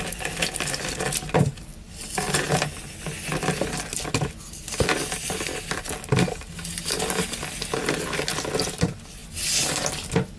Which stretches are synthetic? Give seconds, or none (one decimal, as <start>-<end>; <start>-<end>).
none